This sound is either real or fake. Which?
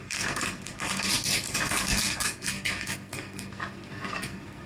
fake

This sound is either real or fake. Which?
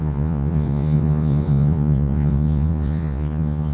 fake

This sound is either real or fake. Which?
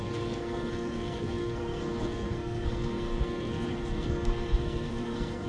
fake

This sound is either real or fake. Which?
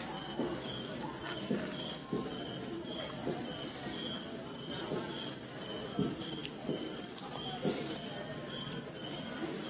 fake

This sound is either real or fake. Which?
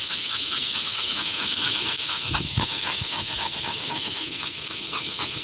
fake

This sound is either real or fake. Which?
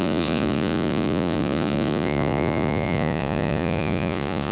fake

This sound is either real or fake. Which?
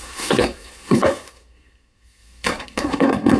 fake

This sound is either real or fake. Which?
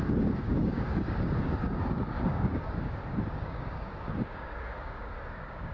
fake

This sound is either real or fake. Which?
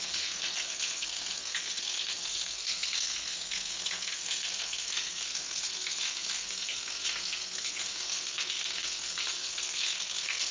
fake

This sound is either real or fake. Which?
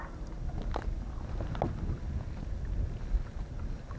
real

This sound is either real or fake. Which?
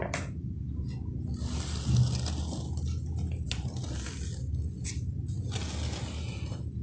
real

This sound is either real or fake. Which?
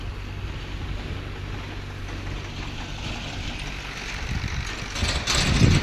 real